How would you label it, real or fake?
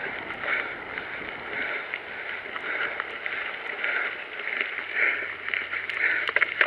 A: real